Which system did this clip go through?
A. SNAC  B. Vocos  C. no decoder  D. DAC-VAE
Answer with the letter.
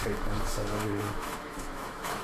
D